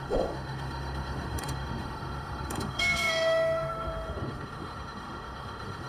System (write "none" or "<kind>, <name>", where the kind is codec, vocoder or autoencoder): autoencoder, DAC-VAE